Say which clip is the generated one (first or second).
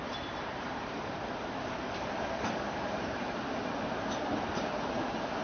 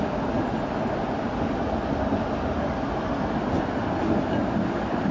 first